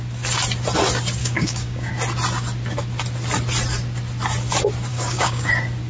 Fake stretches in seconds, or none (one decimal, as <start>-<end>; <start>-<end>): 1.2-1.9; 4.9-5.5